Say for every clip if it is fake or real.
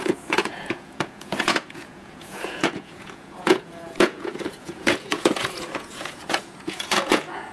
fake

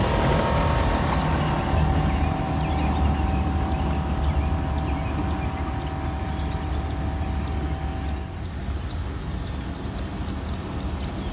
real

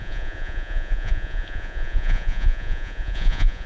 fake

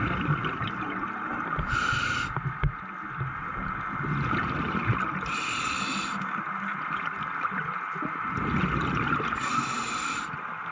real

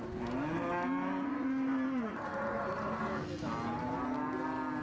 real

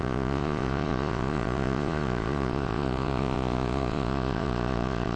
fake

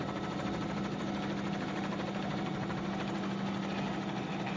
real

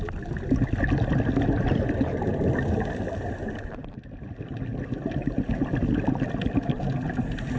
real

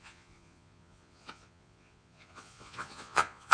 fake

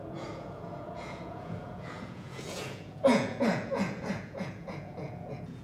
fake